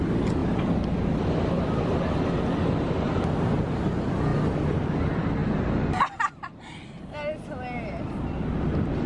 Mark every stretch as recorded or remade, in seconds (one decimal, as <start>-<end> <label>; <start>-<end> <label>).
0.0-9.1 recorded